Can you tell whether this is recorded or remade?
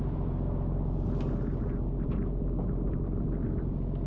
recorded